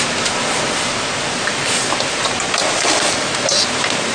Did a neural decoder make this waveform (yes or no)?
no